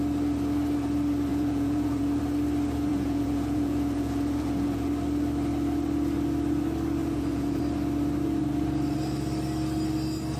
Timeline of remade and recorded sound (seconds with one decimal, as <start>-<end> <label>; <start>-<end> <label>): 0.0-1.3 recorded; 1.3-2.2 remade; 2.2-2.9 recorded; 2.9-4.9 remade; 4.9-7.0 recorded; 7.0-7.6 remade; 7.6-10.4 recorded